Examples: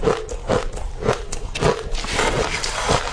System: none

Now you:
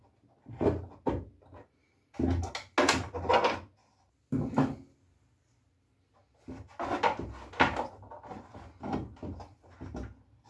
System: none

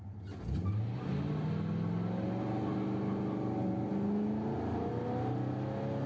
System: none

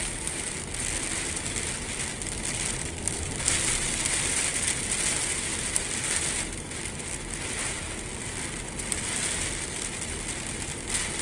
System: none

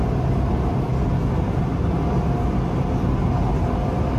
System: none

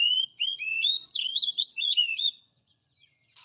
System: vocoder, Vocos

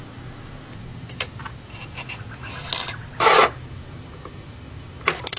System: none